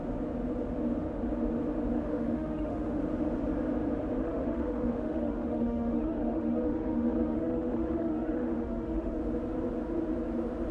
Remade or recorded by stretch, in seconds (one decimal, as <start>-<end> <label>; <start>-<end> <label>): 0.0-1.9 recorded; 1.9-3.0 remade; 3.0-4.2 recorded; 4.2-9.2 remade; 9.2-10.7 recorded